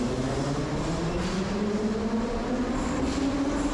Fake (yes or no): no